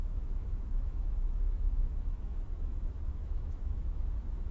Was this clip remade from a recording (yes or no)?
yes